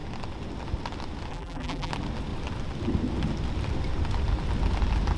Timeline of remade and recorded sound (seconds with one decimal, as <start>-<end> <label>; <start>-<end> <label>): 0.0-1.3 recorded; 1.3-1.9 remade; 1.9-5.2 recorded